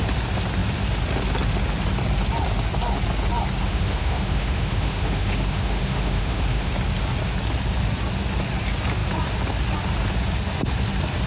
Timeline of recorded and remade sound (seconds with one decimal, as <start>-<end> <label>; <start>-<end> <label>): 0.0-3.6 recorded; 3.6-6.7 remade; 6.7-11.3 recorded

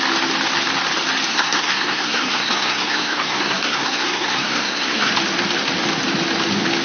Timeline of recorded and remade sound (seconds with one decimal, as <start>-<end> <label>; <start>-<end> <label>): 0.0-1.3 recorded; 1.3-5.1 remade; 5.1-6.8 recorded

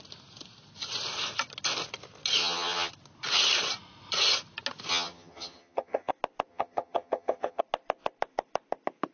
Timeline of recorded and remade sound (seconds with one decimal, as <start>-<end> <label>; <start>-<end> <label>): 0.0-2.4 recorded; 2.4-2.9 remade; 2.9-4.9 recorded; 4.9-6.1 remade; 6.1-6.5 recorded; 6.5-7.6 remade; 7.6-9.1 recorded

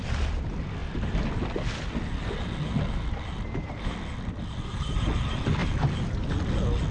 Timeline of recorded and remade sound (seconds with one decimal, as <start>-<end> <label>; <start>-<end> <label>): 0.0-6.9 recorded

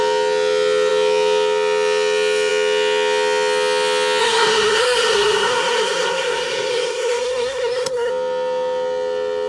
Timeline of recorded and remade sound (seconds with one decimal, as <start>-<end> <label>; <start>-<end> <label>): 0.0-4.2 recorded; 4.2-8.1 remade; 8.1-9.5 recorded